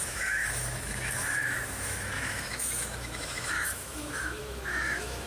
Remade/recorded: remade